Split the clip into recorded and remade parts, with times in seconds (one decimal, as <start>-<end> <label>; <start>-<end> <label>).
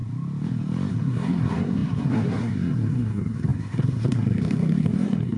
0.0-0.9 recorded; 0.9-5.4 remade